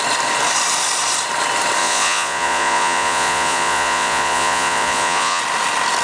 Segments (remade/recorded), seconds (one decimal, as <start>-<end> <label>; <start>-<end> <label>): 0.0-1.8 recorded; 1.8-5.4 remade; 5.4-6.0 recorded